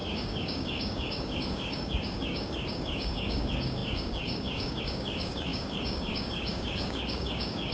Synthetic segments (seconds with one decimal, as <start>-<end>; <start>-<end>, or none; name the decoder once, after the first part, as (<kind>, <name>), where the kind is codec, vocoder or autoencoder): 0.0-7.7 (codec, DAC)